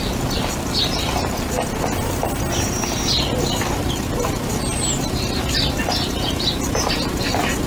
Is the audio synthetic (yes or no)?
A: no